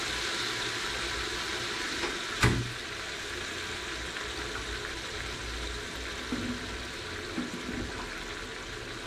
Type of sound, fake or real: real